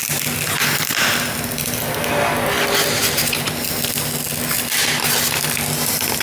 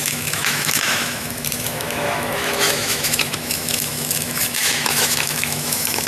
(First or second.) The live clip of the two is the first